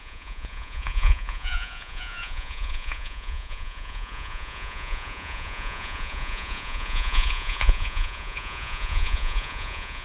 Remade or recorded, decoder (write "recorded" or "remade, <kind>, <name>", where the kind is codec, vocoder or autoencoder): remade, vocoder, Vocos